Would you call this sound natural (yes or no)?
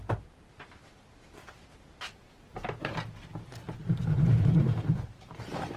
no